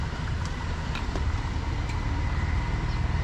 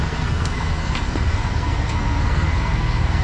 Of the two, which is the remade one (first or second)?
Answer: second